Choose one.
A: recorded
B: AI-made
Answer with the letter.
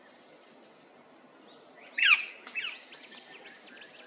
A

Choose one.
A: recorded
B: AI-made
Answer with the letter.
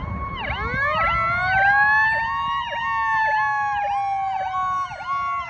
A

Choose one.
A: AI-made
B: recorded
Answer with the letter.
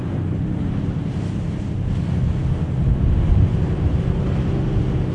B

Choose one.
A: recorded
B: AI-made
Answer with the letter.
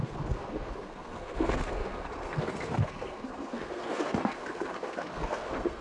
B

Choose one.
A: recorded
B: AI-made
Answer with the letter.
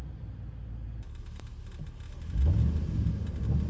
A